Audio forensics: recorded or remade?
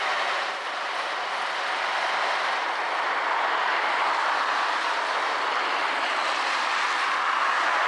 recorded